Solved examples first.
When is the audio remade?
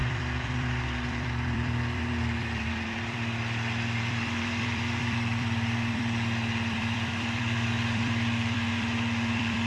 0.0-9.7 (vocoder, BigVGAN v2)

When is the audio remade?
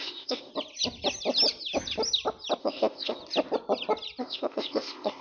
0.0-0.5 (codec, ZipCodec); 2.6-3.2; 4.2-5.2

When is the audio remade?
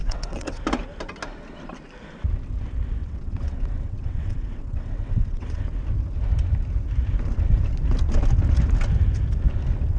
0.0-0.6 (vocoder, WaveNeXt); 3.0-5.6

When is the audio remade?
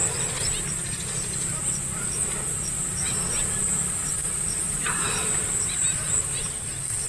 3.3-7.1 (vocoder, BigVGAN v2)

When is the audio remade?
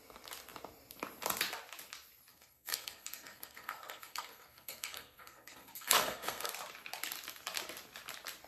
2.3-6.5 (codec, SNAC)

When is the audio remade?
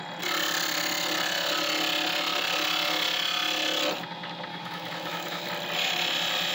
4.5-5.5 (autoencoder, DAC-VAE)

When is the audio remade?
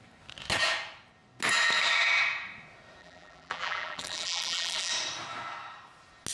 3.0-4.9 (vocoder, BigVGAN v2)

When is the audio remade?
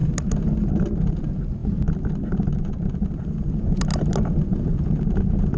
none